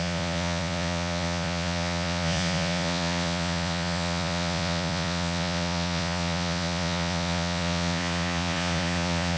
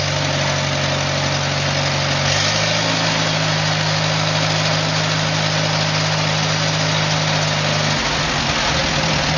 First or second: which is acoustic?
second